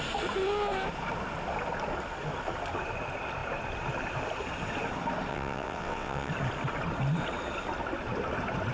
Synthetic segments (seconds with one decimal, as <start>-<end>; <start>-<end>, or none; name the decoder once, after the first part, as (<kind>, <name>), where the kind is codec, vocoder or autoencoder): 5.3-6.3 (vocoder, WaveNeXt)